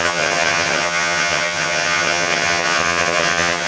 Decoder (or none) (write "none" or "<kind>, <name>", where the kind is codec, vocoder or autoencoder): vocoder, HiFi-GAN